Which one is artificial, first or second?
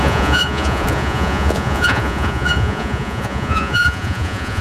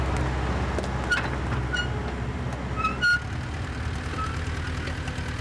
first